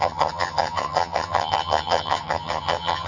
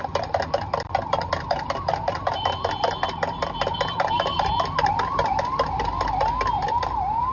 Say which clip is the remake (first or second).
first